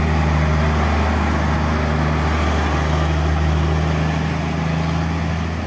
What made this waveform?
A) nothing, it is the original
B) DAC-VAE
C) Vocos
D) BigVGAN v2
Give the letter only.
A